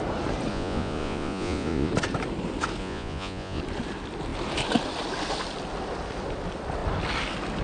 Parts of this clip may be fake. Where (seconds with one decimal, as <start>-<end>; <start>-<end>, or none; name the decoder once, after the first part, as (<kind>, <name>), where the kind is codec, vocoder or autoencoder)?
0.5-1.9 (vocoder, Vocos); 2.8-3.6